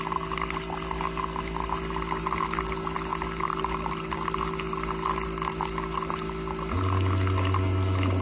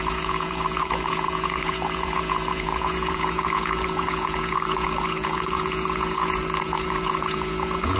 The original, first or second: first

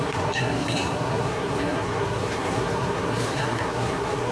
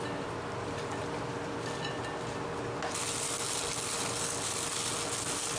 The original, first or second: second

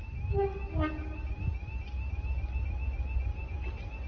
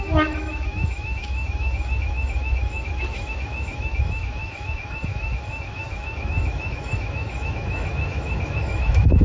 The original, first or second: first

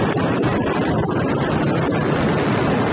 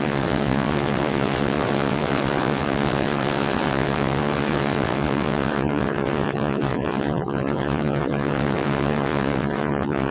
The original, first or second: first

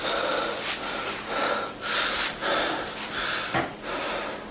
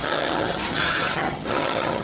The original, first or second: first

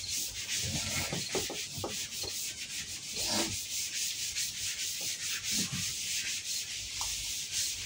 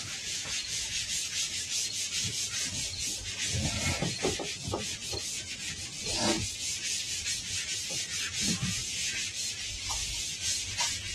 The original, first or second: first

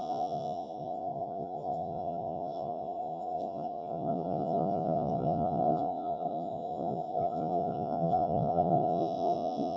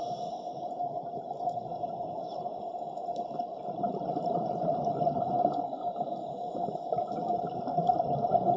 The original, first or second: second